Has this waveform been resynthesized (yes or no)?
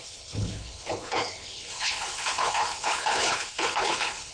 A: yes